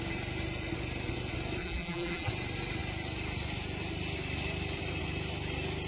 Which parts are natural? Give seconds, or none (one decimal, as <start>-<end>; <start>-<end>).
0.0-1.6; 2.3-5.9

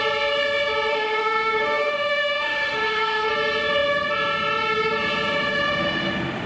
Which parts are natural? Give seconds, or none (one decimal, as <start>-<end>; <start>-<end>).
0.0-0.9; 3.3-6.5

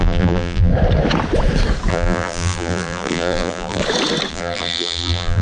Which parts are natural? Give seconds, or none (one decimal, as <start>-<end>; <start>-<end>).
0.7-1.9; 3.8-4.3

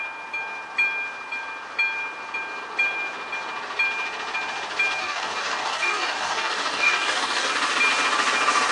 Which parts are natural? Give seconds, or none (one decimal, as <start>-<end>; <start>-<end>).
0.0-5.0; 7.5-8.7

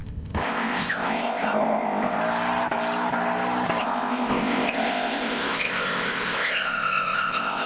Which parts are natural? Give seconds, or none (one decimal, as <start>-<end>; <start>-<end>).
2.2-3.8